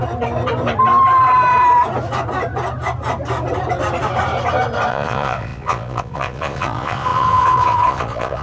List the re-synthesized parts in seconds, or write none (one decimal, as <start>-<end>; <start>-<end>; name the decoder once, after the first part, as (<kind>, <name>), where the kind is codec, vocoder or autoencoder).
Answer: 4.9-8.4 (vocoder, Vocos)